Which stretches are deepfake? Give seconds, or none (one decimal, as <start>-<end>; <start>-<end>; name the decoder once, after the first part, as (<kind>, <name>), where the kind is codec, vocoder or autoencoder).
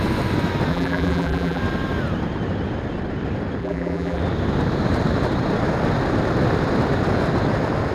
0.7-1.6 (vocoder, BigVGAN v2); 3.6-4.2